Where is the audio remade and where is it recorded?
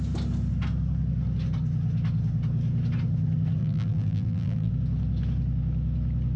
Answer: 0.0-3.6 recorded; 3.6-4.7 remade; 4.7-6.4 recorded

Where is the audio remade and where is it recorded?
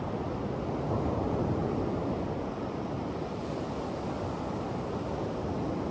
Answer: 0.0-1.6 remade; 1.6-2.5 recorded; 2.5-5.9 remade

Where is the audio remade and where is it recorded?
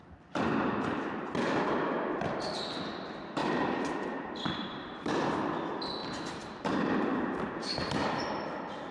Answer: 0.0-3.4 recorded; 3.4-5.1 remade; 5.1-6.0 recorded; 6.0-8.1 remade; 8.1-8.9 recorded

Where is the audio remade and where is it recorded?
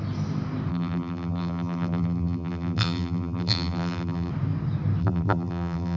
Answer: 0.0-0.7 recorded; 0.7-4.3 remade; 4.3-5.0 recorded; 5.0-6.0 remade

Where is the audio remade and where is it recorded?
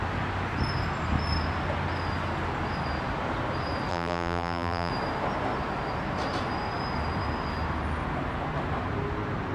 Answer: 0.0-3.9 recorded; 3.9-4.9 remade; 4.9-9.5 recorded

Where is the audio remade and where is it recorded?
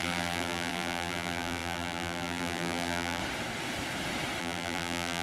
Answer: 0.0-3.2 remade; 3.2-4.4 recorded; 4.4-5.2 remade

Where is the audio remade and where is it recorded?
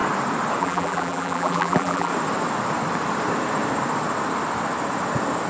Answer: 0.0-0.6 recorded; 0.6-2.1 remade; 2.1-5.5 recorded